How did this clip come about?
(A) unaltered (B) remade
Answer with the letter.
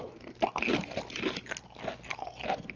A